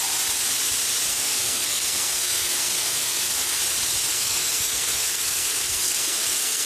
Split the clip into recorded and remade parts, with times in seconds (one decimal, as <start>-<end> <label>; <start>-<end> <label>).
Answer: 0.0-1.1 recorded; 1.1-3.6 remade; 3.6-4.1 recorded; 4.1-6.7 remade